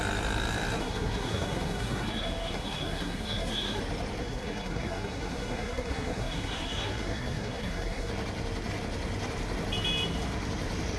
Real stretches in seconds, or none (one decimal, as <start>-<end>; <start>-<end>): 0.0-0.8; 3.8-4.2; 8.1-11.0